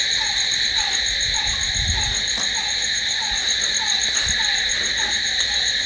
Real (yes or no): yes